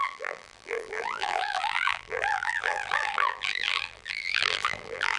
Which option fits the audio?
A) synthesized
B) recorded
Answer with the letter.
A